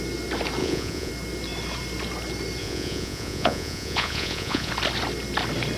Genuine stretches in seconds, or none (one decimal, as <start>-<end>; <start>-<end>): 0.0-0.6; 1.1-2.6; 4.7-5.8